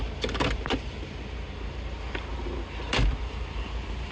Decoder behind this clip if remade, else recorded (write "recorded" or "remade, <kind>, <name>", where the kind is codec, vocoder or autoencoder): recorded